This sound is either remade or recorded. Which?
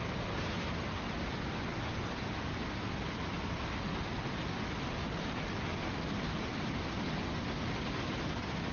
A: recorded